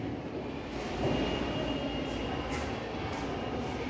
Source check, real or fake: real